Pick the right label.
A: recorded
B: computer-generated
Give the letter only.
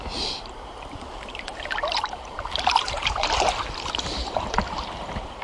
B